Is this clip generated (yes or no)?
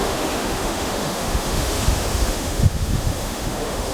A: yes